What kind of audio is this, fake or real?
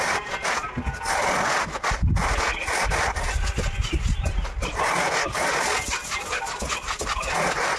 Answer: real